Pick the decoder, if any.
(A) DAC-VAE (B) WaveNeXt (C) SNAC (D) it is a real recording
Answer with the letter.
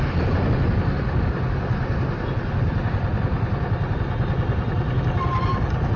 D